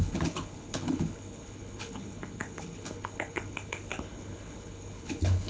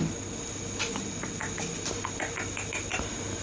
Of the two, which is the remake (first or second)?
first